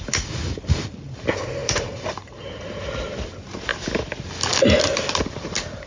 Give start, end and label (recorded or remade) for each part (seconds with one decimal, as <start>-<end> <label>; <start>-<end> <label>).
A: 0.0-5.9 recorded